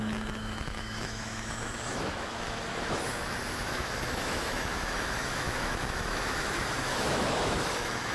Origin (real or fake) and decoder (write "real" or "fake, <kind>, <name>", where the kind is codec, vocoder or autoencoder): fake, autoencoder, DAC-VAE